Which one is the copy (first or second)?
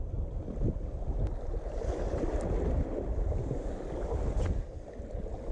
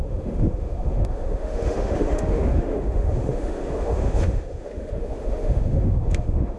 second